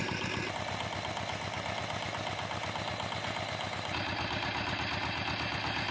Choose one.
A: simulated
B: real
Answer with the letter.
B